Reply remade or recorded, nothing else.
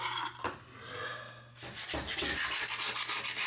recorded